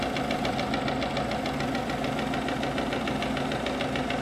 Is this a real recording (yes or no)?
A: yes